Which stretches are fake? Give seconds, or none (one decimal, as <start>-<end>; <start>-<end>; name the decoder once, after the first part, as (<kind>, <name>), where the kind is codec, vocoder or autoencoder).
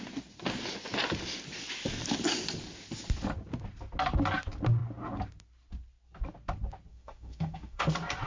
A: 6.9-7.9 (autoencoder, DAC-VAE)